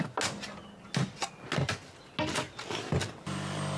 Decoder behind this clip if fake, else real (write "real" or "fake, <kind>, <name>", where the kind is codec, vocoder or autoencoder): real